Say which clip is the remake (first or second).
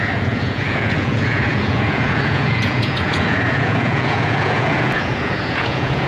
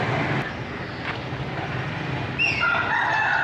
first